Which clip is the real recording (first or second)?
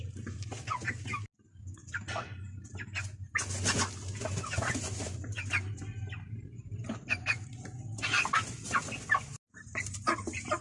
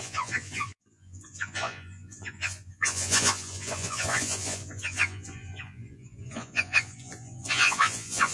first